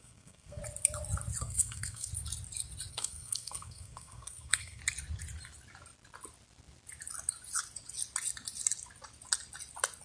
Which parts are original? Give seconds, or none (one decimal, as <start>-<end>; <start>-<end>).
0.6-1.4; 2.1-2.9; 4.8-10.0